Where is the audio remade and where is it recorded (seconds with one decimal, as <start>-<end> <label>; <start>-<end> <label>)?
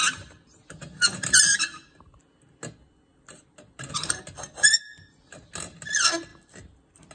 0.0-7.1 recorded